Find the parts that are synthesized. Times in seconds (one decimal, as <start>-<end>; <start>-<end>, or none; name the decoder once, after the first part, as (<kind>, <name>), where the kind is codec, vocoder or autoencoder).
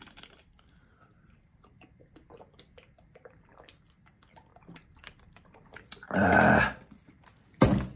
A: none